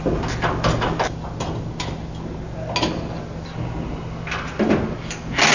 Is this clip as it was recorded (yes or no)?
yes